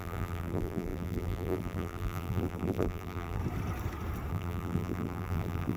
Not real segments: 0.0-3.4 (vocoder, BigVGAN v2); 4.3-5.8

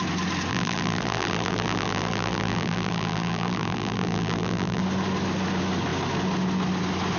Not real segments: 0.5-4.8 (vocoder, BigVGAN v2)

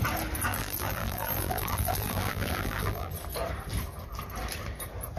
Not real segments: 0.5-3.1 (vocoder, BigVGAN v2)

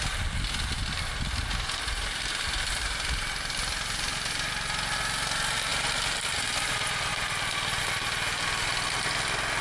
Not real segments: 1.4-4.5 (vocoder, BigVGAN v2)

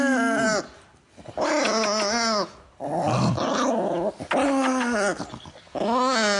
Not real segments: none

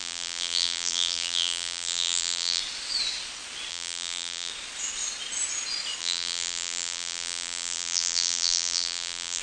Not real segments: 0.0-2.6 (vocoder, BigVGAN v2); 3.7-4.5; 6.0-9.4

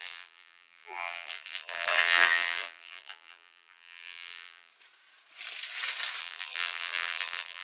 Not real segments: 0.0-4.7 (vocoder, BigVGAN v2); 6.2-7.6

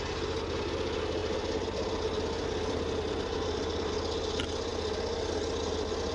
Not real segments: 1.2-3.9 (vocoder, BigVGAN v2)